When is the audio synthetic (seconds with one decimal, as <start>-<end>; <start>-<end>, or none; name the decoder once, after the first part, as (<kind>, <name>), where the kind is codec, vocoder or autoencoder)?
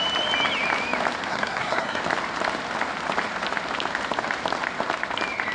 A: 1.3-2.0 (codec, SNAC)